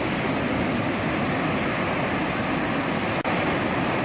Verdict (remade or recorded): recorded